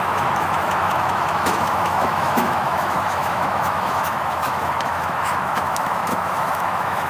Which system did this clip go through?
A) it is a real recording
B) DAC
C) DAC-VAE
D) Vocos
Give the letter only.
C